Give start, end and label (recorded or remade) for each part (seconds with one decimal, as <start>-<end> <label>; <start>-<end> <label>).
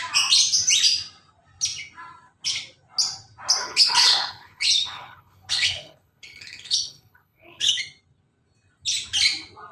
0.0-3.6 recorded; 3.6-7.8 remade; 7.8-9.7 recorded